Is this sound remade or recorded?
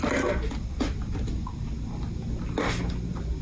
recorded